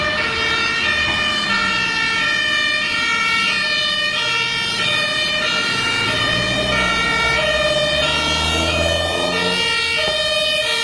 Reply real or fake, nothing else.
real